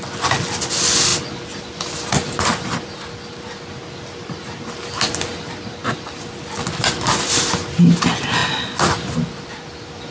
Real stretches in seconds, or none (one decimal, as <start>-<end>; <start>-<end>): 0.0-10.1